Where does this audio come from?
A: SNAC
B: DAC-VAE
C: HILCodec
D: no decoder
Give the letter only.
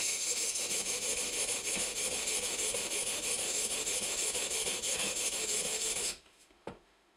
B